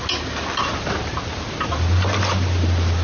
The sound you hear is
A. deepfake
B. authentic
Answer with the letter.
B